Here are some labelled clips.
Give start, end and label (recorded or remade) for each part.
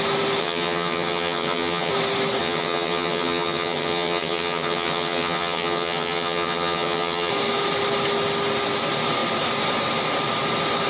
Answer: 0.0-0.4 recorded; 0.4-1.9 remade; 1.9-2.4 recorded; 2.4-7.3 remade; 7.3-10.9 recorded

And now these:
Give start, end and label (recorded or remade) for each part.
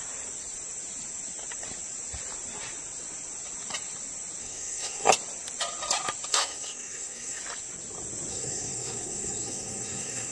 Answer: 0.0-4.4 recorded; 4.4-5.1 remade; 5.1-6.3 recorded; 6.3-7.4 remade; 7.4-8.3 recorded; 8.3-10.3 remade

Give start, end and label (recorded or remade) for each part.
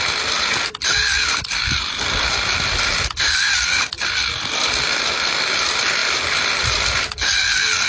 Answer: 0.0-7.9 recorded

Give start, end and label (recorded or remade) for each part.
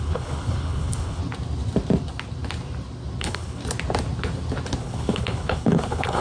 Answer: 0.0-1.2 remade; 1.2-3.2 recorded; 3.2-3.6 remade; 3.6-4.8 recorded; 4.8-6.2 remade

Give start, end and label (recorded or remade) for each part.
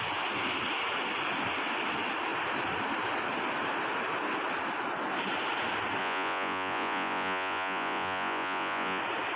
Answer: 0.0-6.0 recorded; 6.0-9.0 remade; 9.0-9.4 recorded